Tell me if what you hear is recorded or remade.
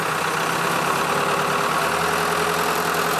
recorded